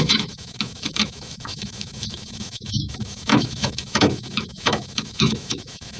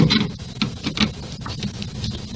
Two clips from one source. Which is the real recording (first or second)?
second